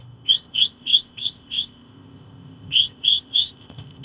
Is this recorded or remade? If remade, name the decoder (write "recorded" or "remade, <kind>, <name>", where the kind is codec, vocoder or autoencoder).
remade, codec, ZipCodec